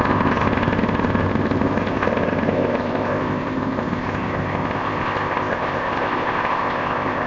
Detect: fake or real fake